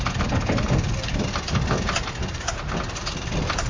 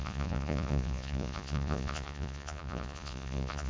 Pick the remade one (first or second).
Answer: second